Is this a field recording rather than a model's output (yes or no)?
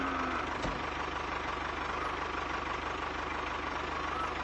yes